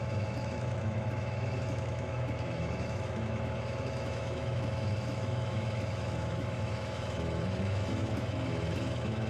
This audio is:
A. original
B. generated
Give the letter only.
B